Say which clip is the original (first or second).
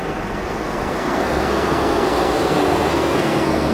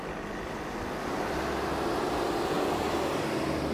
second